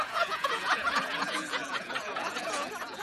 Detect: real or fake fake